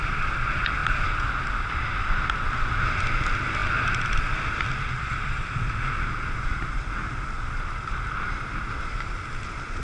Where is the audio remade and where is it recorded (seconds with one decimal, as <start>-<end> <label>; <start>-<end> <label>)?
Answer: 0.0-9.8 recorded